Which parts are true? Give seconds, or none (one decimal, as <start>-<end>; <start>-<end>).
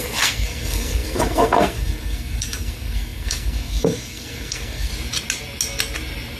4.9-6.4